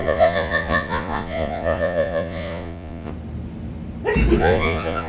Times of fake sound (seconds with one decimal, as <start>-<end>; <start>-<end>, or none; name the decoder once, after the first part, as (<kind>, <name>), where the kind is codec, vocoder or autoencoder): 0.0-3.1 (vocoder, Vocos); 4.4-5.1